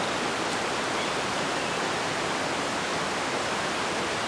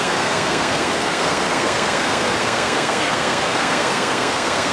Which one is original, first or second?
first